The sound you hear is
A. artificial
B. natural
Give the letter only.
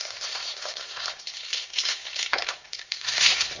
A